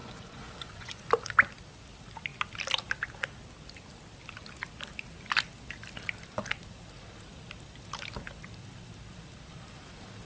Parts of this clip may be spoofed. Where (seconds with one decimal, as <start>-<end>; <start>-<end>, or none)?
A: 0.0-1.1

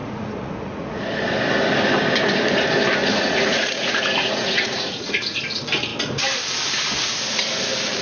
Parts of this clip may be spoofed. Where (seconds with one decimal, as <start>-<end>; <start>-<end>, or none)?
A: 0.0-1.0; 3.0-5.4

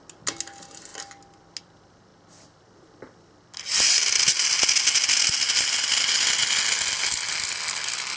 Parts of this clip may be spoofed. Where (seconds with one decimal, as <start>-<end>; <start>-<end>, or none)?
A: none

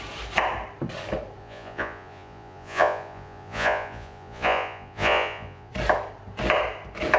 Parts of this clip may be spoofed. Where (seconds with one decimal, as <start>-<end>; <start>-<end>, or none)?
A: 1.4-5.7

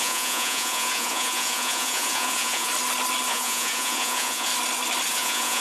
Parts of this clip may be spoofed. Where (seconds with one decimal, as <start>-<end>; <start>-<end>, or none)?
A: 0.0-2.7; 3.3-4.5; 5.1-5.6

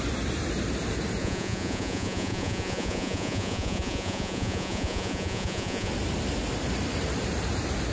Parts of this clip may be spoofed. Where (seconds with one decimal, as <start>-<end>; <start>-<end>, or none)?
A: 1.2-5.9

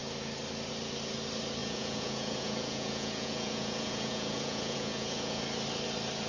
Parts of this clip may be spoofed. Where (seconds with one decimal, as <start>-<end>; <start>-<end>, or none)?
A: 1.6-5.4